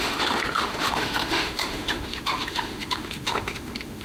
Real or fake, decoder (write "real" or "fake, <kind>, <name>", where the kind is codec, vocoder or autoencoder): fake, autoencoder, DAC-VAE